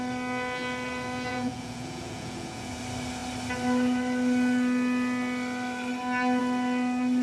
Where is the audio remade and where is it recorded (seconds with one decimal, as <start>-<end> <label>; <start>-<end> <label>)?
0.0-1.3 recorded; 1.3-2.8 remade; 2.8-7.2 recorded